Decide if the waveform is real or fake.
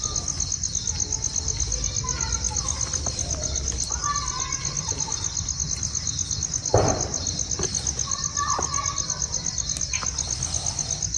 real